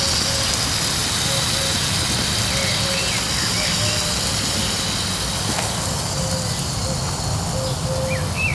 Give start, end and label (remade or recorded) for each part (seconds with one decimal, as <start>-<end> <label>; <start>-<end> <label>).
0.0-8.5 recorded